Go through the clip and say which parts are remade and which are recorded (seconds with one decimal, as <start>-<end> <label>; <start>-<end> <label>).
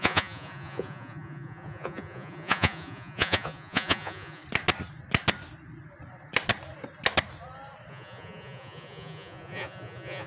0.0-4.4 remade; 4.4-7.9 recorded; 7.9-10.3 remade